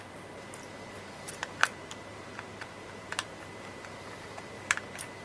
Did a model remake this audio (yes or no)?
yes